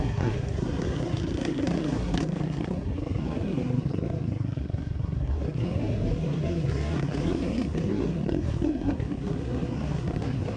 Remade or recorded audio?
remade